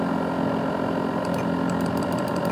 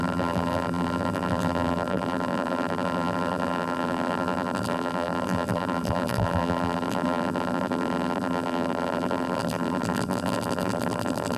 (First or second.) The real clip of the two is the first